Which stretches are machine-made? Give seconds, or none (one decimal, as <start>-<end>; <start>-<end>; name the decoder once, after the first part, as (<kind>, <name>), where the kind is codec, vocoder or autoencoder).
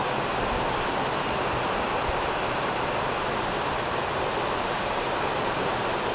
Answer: none